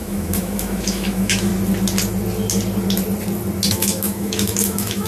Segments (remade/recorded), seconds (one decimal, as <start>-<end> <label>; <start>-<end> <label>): 0.0-1.5 remade; 1.5-3.7 recorded; 3.7-5.1 remade